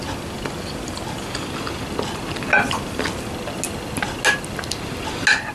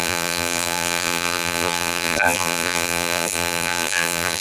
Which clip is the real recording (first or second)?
first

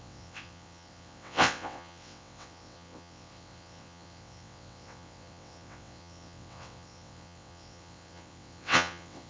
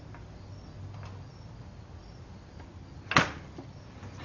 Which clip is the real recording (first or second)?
second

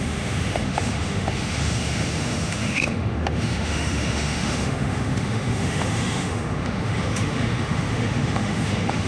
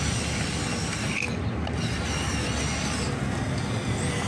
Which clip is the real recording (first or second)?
second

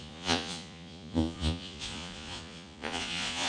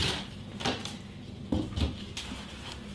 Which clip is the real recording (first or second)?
second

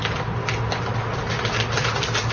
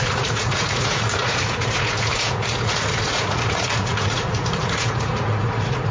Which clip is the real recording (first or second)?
first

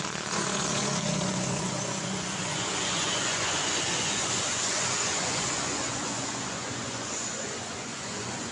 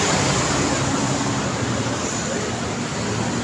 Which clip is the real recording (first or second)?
second